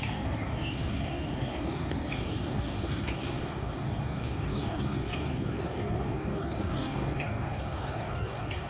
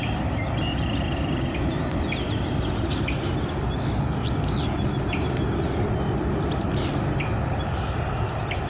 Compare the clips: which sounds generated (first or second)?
first